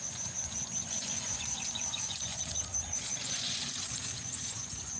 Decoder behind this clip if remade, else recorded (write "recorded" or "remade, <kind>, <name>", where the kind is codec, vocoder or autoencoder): remade, vocoder, Vocos